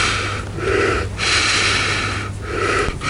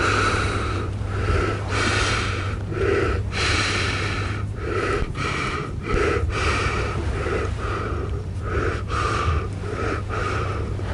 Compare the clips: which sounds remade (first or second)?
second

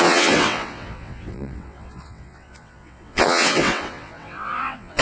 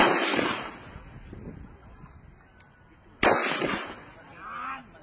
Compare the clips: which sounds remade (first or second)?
first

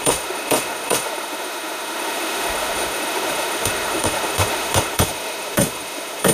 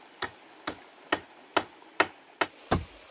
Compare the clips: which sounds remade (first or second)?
first